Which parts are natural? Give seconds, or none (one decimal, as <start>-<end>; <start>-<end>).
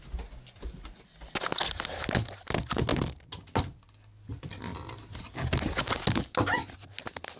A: 0.0-7.4